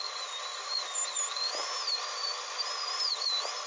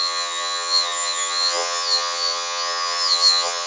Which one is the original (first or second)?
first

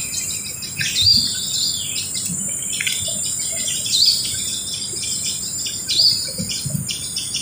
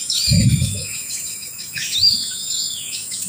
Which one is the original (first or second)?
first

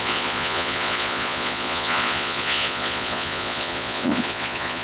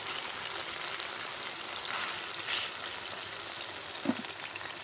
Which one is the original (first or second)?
second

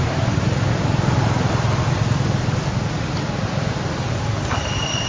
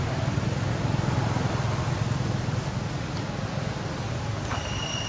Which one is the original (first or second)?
second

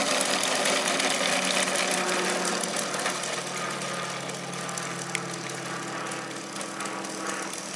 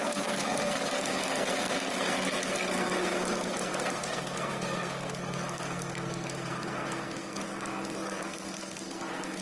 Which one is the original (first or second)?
first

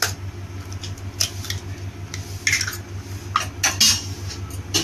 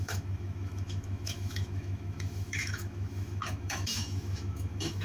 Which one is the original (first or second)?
first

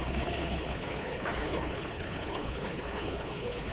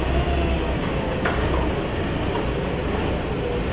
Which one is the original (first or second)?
second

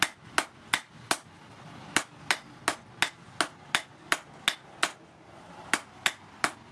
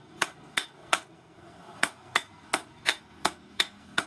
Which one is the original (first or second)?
first